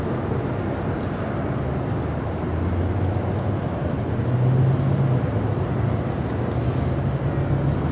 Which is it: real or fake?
real